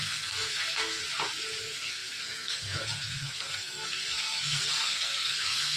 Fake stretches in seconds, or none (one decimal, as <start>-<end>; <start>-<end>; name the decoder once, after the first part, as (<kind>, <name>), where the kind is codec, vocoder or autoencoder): 0.0-1.0 (codec, SNAC); 1.6-5.8